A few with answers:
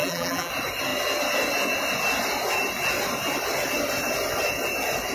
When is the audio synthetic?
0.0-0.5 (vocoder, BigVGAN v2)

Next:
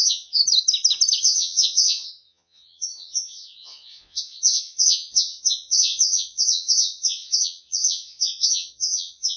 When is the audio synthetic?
0.0-0.4 (vocoder, Vocos); 1.2-9.4

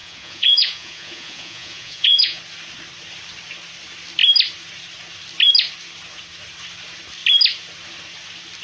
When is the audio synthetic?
0.0-2.4 (vocoder, Vocos)